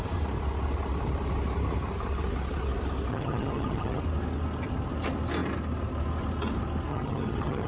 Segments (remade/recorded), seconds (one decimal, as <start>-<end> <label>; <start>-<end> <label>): 0.0-3.1 recorded; 3.1-4.0 remade; 4.0-6.9 recorded; 6.9-7.7 remade